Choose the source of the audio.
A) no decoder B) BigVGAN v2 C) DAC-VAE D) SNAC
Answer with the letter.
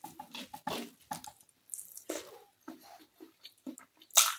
A